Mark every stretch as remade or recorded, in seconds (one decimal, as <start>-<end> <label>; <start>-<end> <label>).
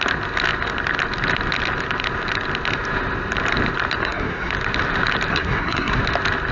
0.0-4.0 recorded; 4.0-4.5 remade; 4.5-5.3 recorded; 5.3-6.0 remade; 6.0-6.5 recorded